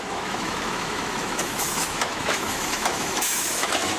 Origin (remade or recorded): remade